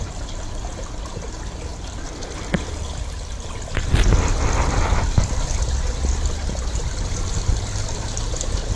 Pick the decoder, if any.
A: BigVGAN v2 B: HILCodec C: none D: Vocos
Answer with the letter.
C